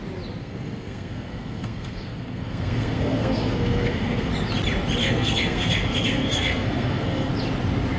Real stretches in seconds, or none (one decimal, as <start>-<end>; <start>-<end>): 0.0-0.4; 4.3-5.0; 7.3-8.0